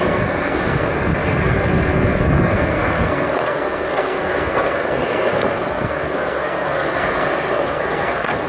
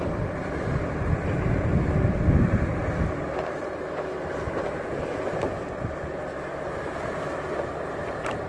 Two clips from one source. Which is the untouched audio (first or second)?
second